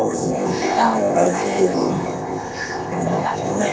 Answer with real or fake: fake